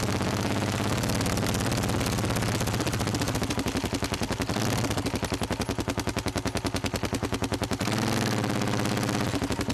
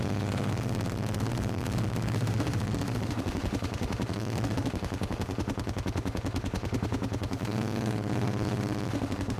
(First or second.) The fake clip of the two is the second